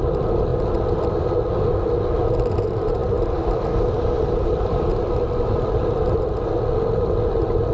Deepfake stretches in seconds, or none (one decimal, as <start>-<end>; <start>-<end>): 0.5-1.5; 3.0-7.7